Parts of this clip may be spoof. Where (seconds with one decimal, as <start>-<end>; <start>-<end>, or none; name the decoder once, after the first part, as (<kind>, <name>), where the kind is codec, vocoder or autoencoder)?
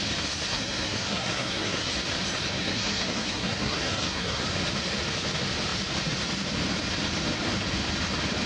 0.5-1.9 (codec, SNAC); 2.6-4.4